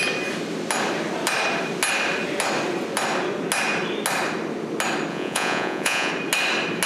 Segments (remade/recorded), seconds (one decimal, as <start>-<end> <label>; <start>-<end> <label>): 0.0-5.1 recorded; 5.1-6.1 remade; 6.1-6.9 recorded